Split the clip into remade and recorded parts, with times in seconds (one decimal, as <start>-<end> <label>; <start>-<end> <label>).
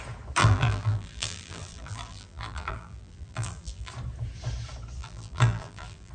0.0-0.4 recorded; 0.4-3.9 remade; 3.9-5.0 recorded; 5.0-6.1 remade